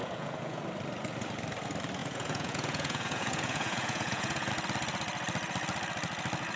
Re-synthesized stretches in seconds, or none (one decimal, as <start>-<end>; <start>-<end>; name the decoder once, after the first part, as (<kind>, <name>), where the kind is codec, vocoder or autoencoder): 0.0-0.6 (vocoder, Vocos); 2.0-4.5